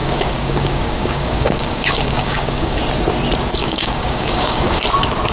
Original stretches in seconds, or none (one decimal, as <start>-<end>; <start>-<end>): 2.8-3.6; 4.8-5.3